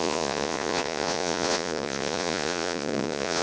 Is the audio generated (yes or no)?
yes